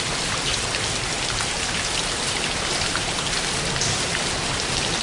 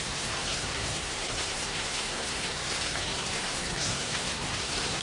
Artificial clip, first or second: second